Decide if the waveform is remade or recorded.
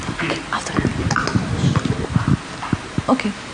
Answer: recorded